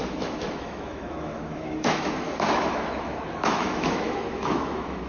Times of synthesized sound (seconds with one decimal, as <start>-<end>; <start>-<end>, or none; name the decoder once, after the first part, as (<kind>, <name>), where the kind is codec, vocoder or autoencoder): 0.0-5.1 (autoencoder, DAC-VAE)